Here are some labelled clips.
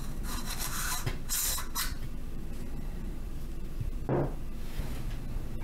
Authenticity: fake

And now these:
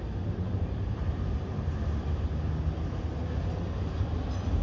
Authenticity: real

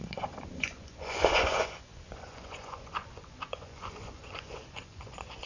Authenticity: fake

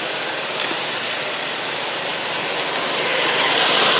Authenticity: real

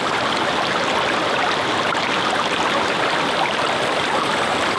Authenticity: real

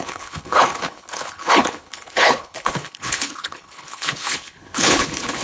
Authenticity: fake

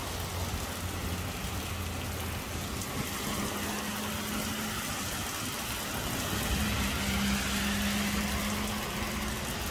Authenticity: real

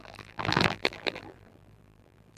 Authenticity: fake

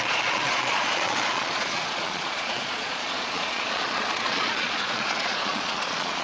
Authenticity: fake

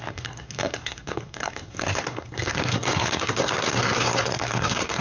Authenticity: fake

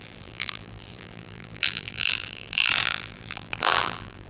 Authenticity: fake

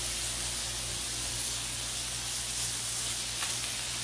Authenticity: real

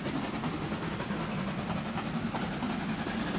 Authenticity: real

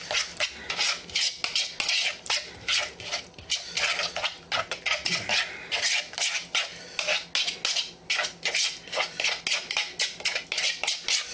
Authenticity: real